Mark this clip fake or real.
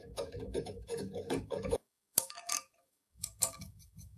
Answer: fake